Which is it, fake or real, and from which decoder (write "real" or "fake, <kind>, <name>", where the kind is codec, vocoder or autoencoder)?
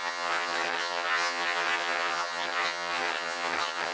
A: fake, vocoder, HiFi-GAN